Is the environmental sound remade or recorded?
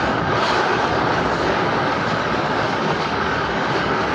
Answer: remade